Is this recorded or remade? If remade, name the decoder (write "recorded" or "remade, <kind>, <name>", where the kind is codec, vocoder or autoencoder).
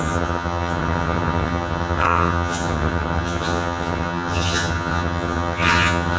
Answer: remade, vocoder, HiFi-GAN